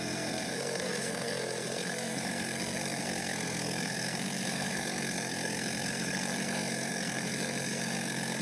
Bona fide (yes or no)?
no